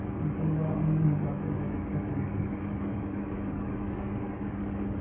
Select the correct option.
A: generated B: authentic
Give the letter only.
A